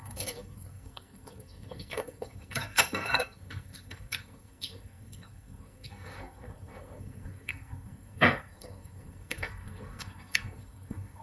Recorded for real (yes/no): no